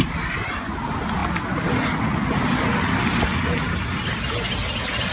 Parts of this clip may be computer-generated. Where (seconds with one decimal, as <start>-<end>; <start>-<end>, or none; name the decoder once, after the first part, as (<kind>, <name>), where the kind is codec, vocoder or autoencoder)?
none